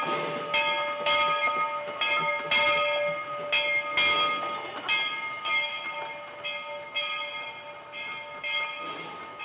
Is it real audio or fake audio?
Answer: real